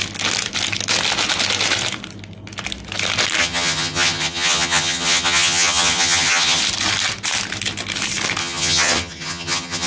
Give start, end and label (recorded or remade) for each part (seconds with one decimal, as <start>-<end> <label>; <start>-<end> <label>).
0.0-3.4 recorded; 3.4-6.6 remade; 6.6-8.4 recorded; 8.4-9.9 remade

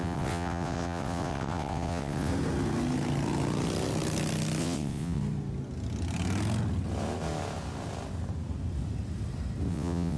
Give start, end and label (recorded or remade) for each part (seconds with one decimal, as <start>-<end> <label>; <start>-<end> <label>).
0.0-2.3 remade; 2.3-4.6 recorded; 4.6-5.2 remade; 5.2-9.7 recorded; 9.7-10.2 remade

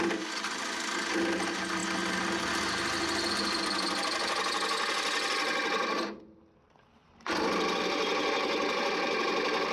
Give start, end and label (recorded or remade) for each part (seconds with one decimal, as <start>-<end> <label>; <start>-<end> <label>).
0.0-9.7 recorded

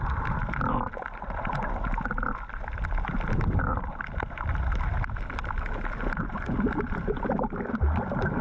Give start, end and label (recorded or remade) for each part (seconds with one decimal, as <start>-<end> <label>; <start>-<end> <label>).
0.0-4.5 remade; 4.5-6.3 recorded; 6.3-8.4 remade

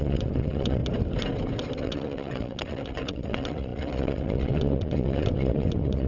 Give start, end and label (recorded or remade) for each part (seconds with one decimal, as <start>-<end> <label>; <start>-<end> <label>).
0.0-0.8 remade; 0.8-1.8 recorded; 1.8-6.1 remade

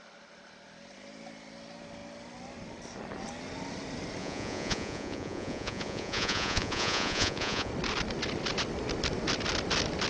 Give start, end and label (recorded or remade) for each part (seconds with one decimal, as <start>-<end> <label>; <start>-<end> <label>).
0.0-4.2 recorded; 4.2-7.7 remade; 7.7-10.1 recorded

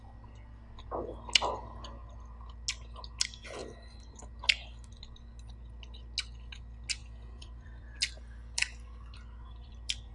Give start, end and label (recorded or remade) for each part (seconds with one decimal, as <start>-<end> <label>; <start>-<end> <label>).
0.0-7.0 recorded; 7.0-10.1 remade

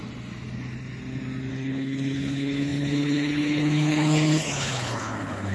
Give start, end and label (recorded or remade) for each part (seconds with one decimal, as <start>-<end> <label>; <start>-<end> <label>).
0.0-1.5 recorded; 1.5-5.5 remade